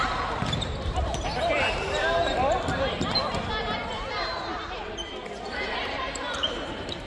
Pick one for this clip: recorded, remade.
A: remade